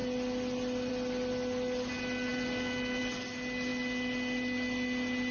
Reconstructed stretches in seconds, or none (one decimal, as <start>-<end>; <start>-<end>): none